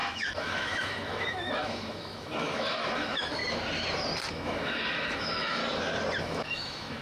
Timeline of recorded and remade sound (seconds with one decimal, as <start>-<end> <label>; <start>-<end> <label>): 0.0-3.4 remade; 3.4-4.3 recorded; 4.3-5.6 remade; 5.6-6.2 recorded; 6.2-7.0 remade

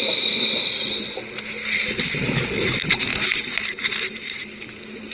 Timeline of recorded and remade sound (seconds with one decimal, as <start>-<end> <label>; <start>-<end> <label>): 0.0-5.1 recorded

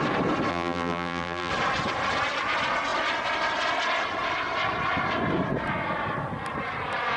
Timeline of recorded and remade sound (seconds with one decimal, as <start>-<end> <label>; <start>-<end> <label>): 0.0-0.5 recorded; 0.5-1.5 remade; 1.5-7.2 recorded